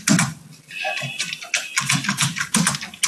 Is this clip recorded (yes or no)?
yes